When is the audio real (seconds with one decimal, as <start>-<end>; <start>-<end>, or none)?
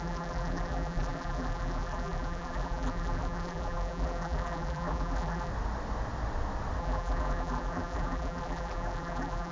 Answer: 5.5-6.8